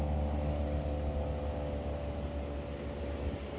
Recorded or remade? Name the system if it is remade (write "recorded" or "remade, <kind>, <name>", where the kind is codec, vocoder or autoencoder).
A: recorded